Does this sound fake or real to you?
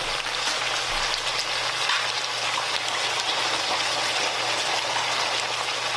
real